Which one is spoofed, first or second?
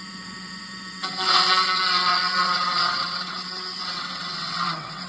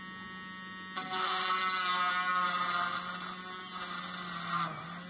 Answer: first